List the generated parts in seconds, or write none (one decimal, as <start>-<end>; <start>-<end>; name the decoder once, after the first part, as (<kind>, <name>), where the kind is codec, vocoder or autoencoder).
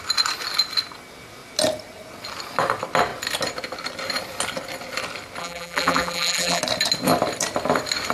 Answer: 5.4-6.6 (vocoder, BigVGAN v2)